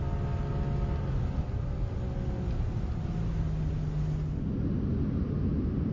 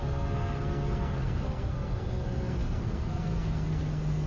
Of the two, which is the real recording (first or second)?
first